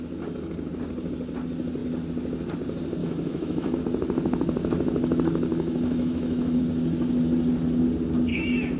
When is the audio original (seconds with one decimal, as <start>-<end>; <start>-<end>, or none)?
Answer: 0.0-3.0; 3.8-5.5; 6.6-8.3